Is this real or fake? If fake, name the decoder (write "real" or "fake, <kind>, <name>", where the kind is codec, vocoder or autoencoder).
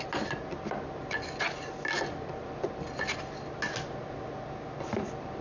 real